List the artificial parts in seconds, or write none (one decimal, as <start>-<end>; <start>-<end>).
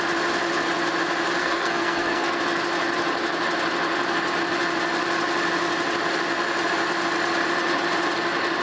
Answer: 1.4-2.4